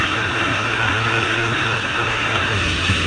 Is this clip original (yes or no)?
no